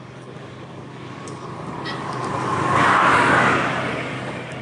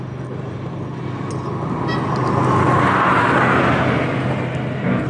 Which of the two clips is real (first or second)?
second